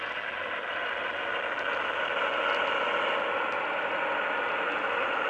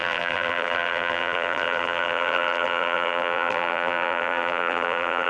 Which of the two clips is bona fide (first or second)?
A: first